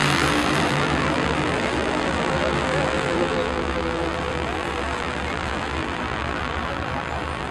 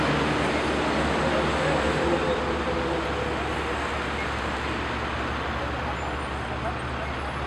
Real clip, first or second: second